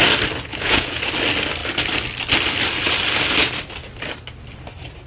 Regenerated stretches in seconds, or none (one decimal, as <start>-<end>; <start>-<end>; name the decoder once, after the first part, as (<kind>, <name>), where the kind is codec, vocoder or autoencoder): 0.5-1.1 (vocoder, Vocos)